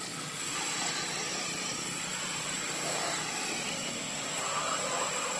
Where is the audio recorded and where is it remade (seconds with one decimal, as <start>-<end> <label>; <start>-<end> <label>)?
0.0-2.6 remade; 2.6-3.3 recorded; 3.3-3.8 remade; 3.8-4.6 recorded; 4.6-5.4 remade